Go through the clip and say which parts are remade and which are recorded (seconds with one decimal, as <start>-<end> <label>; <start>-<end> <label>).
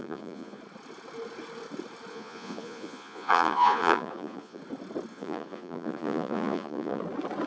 0.0-0.6 remade; 0.6-2.1 recorded; 2.1-4.6 remade; 4.6-5.1 recorded; 5.1-7.0 remade; 7.0-7.5 recorded